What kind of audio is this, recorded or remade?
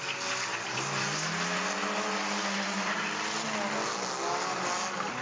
recorded